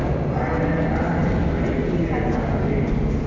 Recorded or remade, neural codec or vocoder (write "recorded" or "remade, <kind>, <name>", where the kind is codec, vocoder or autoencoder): recorded